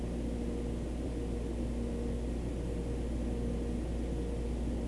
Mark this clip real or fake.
real